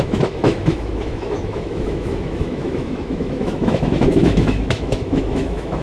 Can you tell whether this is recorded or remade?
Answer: remade